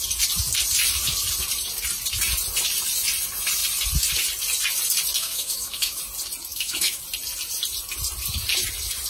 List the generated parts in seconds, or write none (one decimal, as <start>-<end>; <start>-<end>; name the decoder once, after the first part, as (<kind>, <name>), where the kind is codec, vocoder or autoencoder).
5.2-6.0 (autoencoder, DAC-VAE); 6.5-7.0